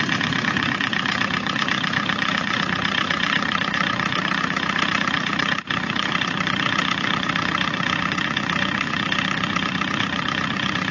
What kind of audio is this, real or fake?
fake